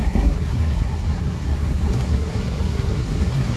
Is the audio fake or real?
fake